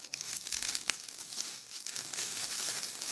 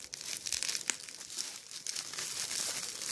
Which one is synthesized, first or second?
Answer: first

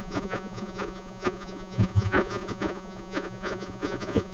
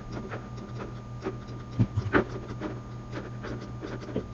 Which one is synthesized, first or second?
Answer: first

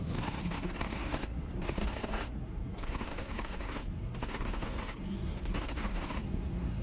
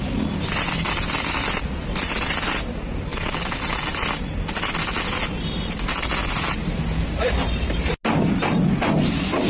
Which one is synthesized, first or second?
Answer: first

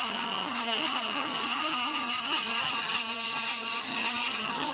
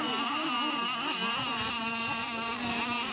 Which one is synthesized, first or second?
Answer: first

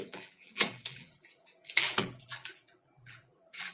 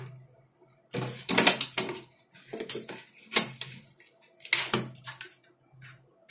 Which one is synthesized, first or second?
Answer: first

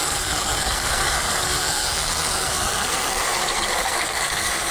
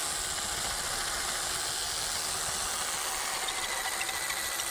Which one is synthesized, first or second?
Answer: first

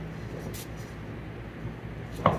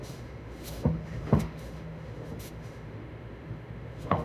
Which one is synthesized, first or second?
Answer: second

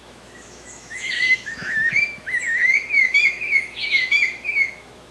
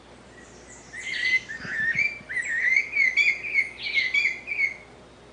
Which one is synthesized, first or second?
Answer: first